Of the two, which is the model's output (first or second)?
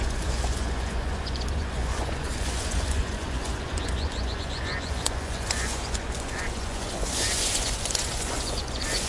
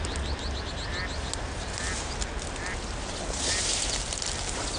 first